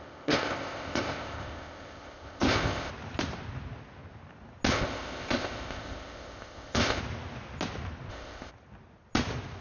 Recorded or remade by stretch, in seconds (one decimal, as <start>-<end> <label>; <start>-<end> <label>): 0.0-2.9 remade; 2.9-4.7 recorded; 4.7-7.0 remade; 7.0-8.1 recorded; 8.1-8.5 remade; 8.5-9.6 recorded